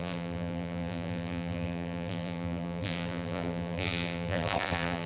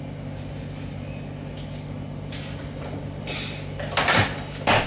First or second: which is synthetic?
first